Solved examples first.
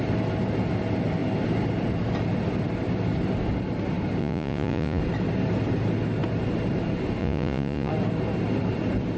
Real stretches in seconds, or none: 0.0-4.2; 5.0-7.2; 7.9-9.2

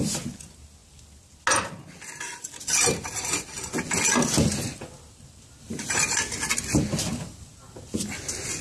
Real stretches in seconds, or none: 0.0-8.6

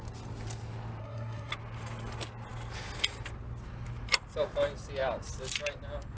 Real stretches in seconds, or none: 0.0-1.0; 1.5-6.2

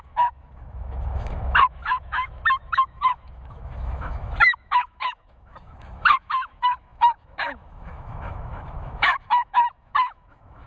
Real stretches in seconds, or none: none